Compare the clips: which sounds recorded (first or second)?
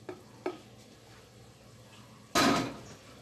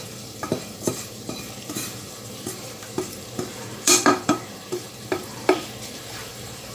first